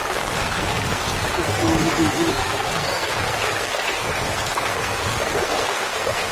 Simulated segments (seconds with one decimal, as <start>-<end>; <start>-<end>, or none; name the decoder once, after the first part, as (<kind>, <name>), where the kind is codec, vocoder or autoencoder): 0.0-6.3 (codec, SNAC)